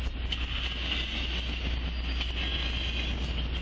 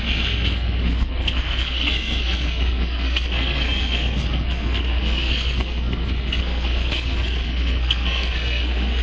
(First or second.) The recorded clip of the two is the first